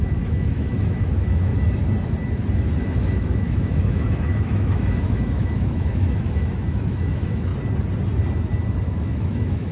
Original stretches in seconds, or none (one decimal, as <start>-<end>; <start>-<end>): 1.5-3.1; 7.5-8.9